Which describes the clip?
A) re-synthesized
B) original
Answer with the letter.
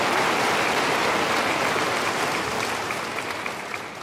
B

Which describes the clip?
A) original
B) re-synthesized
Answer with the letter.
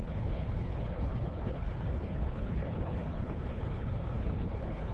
B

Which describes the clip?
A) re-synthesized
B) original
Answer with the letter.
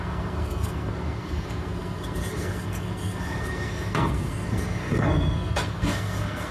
A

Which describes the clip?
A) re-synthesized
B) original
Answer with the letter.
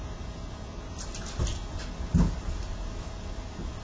B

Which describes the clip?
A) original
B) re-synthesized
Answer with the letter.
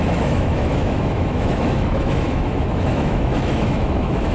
B